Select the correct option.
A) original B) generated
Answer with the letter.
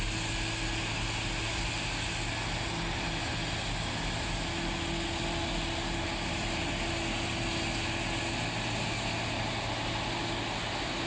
A